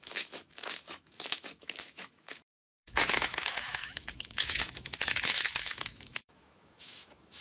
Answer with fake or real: fake